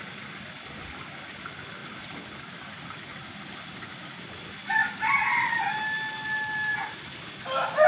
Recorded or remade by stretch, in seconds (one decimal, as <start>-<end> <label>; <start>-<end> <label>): 0.0-7.9 recorded